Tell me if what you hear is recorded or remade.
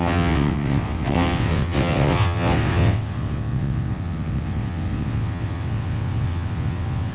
remade